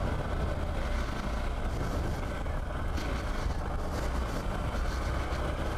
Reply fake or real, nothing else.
real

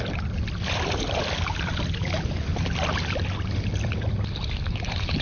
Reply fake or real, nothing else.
real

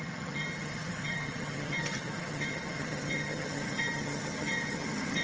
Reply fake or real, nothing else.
fake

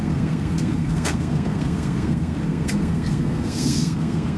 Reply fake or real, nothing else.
fake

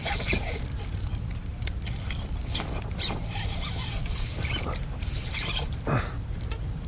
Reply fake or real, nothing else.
fake